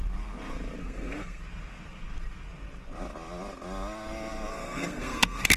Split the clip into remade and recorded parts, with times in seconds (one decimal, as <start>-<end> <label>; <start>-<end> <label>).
0.0-0.8 recorded; 0.8-1.4 remade; 1.4-4.5 recorded; 4.5-5.6 remade